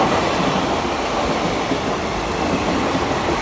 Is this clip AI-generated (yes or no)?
no